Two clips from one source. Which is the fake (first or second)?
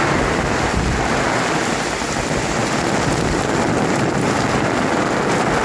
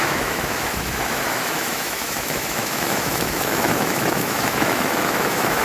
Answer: second